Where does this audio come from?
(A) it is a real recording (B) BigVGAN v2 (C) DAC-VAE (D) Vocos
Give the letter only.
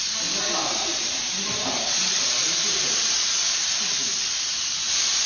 B